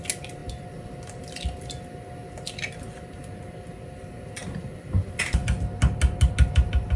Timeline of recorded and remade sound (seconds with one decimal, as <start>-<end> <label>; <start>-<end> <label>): 0.0-7.0 recorded